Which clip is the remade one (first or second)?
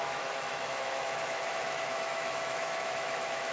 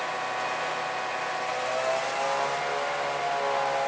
first